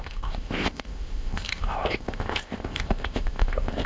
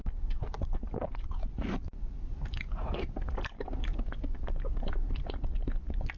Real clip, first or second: second